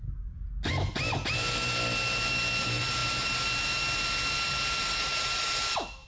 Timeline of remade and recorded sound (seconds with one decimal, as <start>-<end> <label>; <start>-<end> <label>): 0.0-6.1 recorded